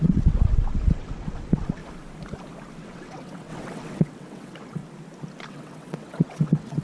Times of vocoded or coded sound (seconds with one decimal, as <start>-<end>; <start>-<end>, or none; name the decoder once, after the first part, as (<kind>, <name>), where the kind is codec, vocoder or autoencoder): 0.0-1.8 (vocoder, WaveNeXt); 2.8-4.8; 5.5-6.8